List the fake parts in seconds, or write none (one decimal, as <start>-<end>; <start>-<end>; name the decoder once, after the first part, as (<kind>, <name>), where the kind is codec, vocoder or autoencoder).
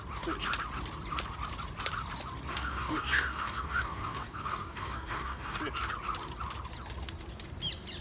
2.5-5.6 (codec, DAC)